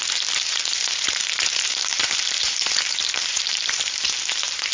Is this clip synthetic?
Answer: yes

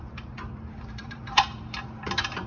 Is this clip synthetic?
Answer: yes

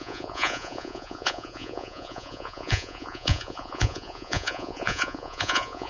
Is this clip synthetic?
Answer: yes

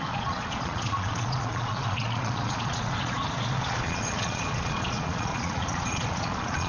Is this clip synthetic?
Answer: yes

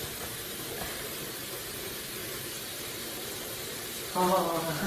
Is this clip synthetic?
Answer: yes